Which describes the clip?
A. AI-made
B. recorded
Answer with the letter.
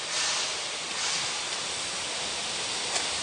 B